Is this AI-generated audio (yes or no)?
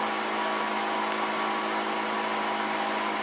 no